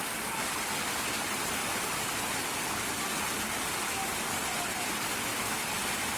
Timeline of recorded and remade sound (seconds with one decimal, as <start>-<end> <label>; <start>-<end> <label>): 0.0-1.6 recorded; 1.6-2.8 remade; 2.8-5.3 recorded; 5.3-6.2 remade